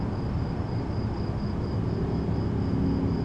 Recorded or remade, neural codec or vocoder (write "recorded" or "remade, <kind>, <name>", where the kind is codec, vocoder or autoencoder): recorded